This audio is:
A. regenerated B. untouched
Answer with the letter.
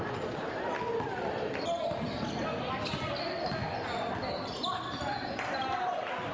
B